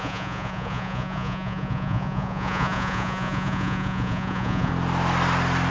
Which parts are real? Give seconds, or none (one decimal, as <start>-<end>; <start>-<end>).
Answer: 4.7-5.7